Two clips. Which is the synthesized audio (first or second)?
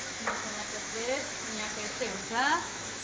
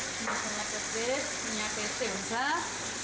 first